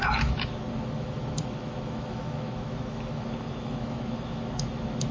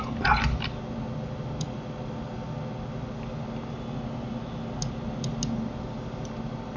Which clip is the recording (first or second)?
second